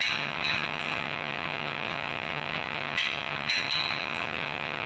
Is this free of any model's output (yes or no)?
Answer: no